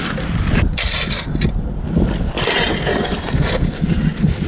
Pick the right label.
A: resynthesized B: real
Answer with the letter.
B